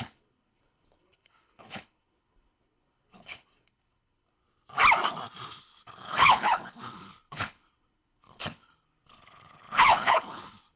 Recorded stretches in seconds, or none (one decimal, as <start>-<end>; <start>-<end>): 4.4-5.6